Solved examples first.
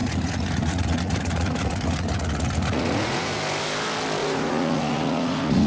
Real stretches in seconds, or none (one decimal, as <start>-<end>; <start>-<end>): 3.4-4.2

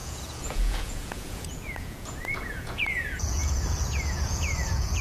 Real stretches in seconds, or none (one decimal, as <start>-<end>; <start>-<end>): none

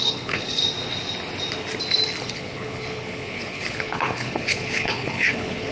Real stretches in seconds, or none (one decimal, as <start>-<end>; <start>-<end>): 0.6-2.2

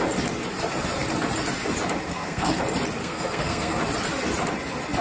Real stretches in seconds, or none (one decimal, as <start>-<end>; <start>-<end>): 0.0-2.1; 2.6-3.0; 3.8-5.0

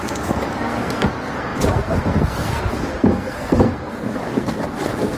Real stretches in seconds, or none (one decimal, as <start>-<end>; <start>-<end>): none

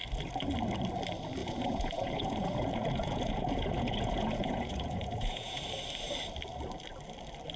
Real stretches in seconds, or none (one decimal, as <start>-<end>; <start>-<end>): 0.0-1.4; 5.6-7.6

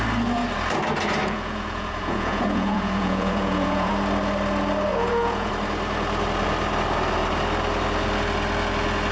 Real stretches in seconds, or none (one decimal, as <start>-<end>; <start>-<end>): 0.0-1.2; 3.9-4.9; 5.5-9.1

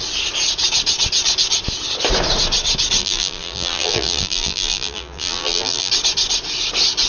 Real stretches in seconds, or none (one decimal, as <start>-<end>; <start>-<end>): 0.0-3.0; 5.9-7.1